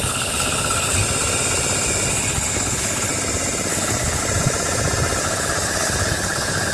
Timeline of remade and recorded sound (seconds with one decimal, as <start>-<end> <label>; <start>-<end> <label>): 0.0-1.0 remade; 1.0-2.1 recorded; 2.1-3.1 remade; 3.1-3.7 recorded; 3.7-4.2 remade; 4.2-5.2 recorded; 5.2-6.7 remade